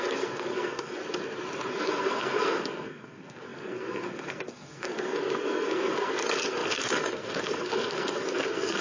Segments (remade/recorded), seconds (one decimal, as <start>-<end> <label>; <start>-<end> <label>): 0.0-1.0 remade; 1.0-1.7 recorded; 1.7-8.8 remade